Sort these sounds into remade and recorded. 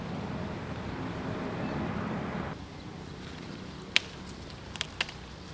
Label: recorded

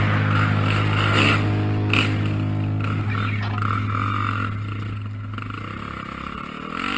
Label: recorded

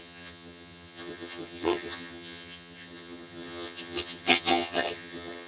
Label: remade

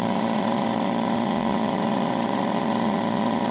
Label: remade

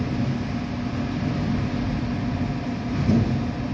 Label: recorded